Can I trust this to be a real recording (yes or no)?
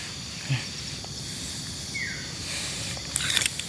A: yes